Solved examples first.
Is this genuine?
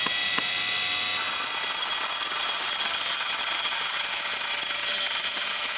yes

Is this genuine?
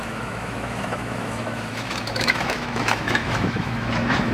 no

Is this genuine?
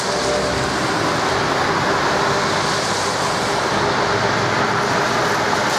yes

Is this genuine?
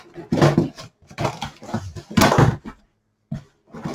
yes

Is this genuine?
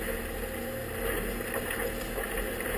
yes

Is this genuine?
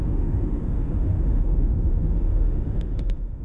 no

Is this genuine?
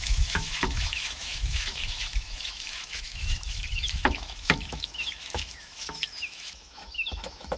no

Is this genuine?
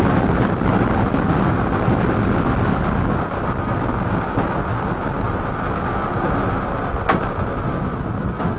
yes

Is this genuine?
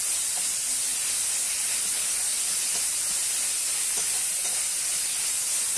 yes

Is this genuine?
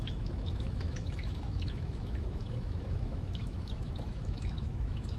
no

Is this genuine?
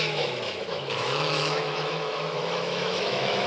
no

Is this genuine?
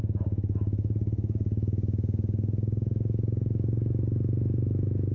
no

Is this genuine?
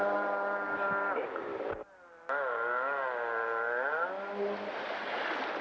yes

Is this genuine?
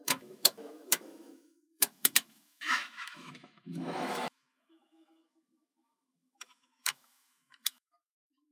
no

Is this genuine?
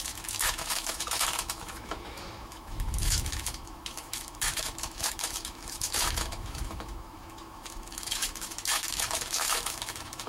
no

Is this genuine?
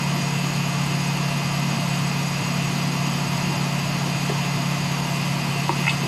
yes